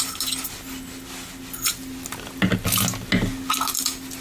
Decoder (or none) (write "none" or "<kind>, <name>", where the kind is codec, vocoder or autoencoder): none